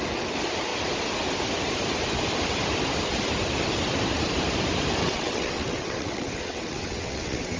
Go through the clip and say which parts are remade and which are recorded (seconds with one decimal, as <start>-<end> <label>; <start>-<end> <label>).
0.0-5.0 recorded; 5.0-7.6 remade